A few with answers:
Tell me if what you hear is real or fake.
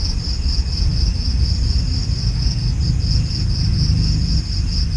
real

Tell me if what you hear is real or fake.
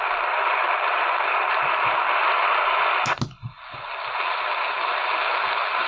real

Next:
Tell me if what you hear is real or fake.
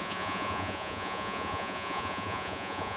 fake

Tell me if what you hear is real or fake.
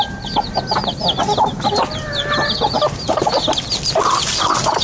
real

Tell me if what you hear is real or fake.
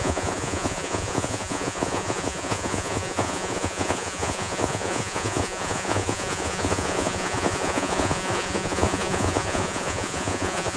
fake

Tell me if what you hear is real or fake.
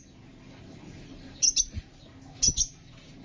real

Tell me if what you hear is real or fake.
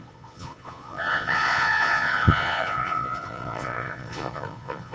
fake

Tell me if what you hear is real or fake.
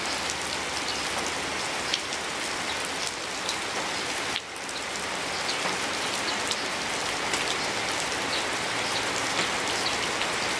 real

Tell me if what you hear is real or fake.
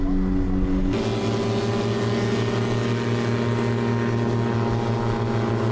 real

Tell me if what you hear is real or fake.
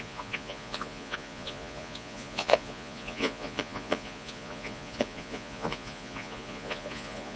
fake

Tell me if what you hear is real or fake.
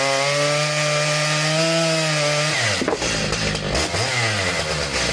real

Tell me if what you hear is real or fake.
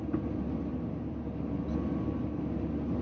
real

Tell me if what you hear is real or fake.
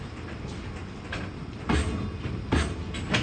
real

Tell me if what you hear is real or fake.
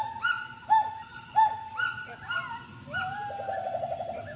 real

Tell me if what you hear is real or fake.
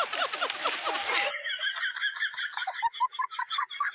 real